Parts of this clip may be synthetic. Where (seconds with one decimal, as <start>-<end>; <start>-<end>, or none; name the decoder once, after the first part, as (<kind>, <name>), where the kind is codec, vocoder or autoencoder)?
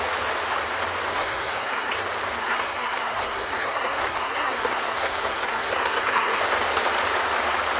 1.1-1.9 (codec, SNAC); 2.4-6.4